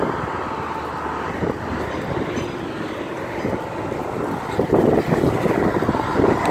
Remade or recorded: recorded